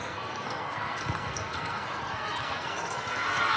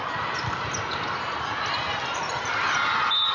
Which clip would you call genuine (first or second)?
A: second